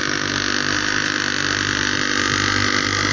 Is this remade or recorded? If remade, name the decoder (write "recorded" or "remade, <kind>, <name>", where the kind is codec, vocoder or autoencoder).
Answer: recorded